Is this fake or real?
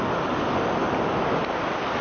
real